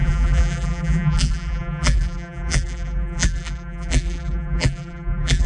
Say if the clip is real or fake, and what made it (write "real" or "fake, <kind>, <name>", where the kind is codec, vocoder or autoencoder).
fake, vocoder, BigVGAN v2